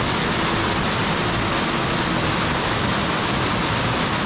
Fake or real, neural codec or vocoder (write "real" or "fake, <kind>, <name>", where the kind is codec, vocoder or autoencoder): real